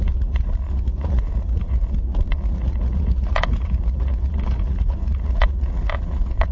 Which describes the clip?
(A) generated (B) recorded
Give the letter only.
A